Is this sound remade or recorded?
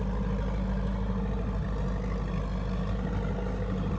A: recorded